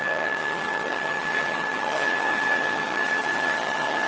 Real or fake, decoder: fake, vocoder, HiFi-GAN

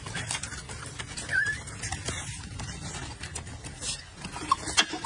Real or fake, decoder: real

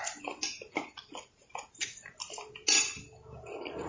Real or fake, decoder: real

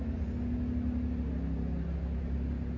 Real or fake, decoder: real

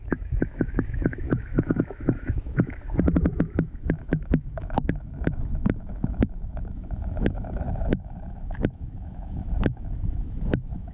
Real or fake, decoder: fake, autoencoder, DAC-VAE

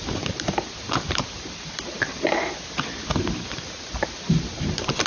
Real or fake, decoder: fake, vocoder, BigVGAN v2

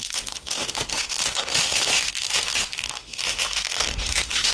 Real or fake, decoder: fake, autoencoder, DAC-VAE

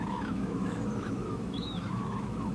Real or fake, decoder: fake, autoencoder, DAC-VAE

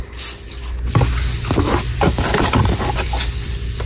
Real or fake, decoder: real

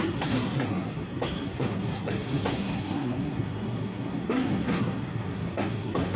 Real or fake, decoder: fake, codec, SNAC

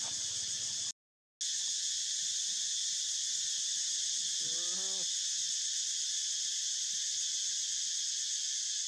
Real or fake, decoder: real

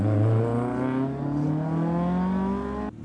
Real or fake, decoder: real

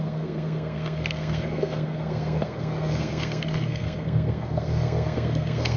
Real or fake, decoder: fake, codec, SNAC